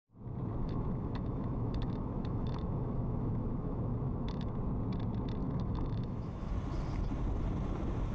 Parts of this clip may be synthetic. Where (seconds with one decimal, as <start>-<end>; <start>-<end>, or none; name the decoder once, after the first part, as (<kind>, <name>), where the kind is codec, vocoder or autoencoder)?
0.6-4.6 (autoencoder, DAC-VAE); 5.4-6.5